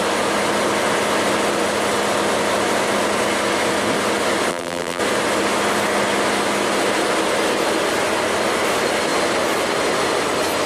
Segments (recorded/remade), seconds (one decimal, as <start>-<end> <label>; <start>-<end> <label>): 0.0-4.5 recorded; 4.5-5.0 remade; 5.0-10.7 recorded